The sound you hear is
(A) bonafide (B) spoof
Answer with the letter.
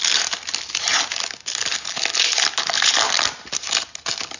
A